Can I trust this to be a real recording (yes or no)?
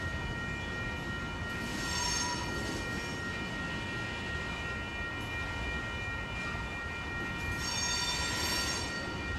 yes